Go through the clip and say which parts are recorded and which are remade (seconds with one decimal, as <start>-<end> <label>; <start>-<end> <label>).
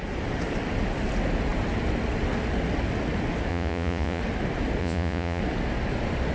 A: 0.0-3.5 recorded; 3.5-4.2 remade; 4.2-4.8 recorded; 4.8-5.4 remade; 5.4-6.3 recorded